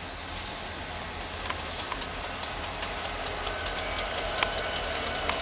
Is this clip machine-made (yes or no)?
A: no